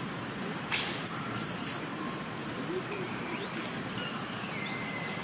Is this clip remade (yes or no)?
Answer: yes